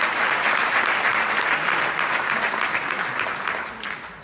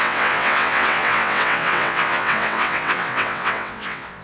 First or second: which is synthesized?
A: second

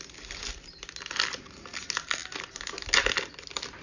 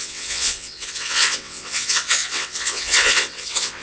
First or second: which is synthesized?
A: second